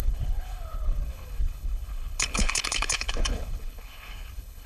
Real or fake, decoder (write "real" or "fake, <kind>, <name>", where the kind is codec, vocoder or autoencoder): fake, codec, HILCodec